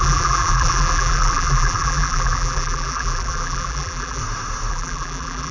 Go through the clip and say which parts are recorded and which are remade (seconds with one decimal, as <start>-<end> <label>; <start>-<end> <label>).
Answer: 0.0-4.2 remade; 4.2-4.7 recorded; 4.7-5.5 remade